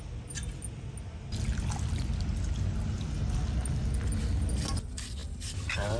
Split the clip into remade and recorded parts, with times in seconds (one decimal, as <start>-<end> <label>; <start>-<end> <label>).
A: 0.0-6.0 recorded